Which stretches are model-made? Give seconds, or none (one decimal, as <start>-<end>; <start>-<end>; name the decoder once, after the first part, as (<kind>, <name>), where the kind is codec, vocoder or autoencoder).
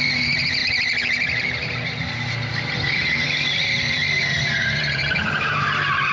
0.0-6.1 (vocoder, BigVGAN v2)